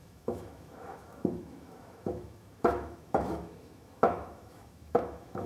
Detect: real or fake fake